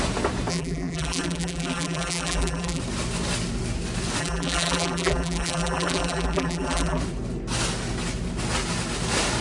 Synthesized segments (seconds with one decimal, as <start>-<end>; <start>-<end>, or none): 0.5-2.8; 4.2-7.0